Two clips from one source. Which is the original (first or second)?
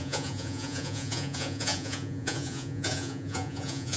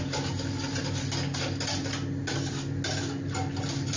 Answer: second